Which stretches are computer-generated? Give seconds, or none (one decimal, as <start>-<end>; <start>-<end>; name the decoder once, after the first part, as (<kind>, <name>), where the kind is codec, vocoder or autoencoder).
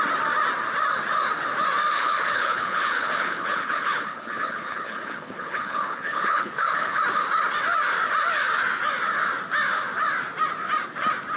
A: 1.9-7.0 (codec, HILCodec)